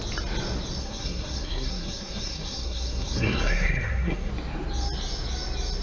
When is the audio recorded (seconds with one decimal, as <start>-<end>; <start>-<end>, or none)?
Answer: 0.0-0.8; 4.3-5.8